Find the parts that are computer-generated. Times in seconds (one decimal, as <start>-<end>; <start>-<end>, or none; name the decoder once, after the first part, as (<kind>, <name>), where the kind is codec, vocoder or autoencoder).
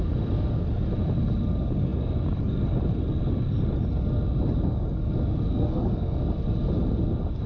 5.5-6.2 (codec, SNAC)